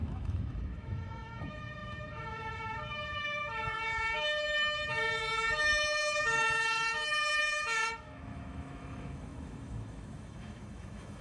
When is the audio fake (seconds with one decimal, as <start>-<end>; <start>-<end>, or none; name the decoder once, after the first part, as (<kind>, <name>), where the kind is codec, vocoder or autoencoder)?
0.0-11.2 (autoencoder, DAC-VAE)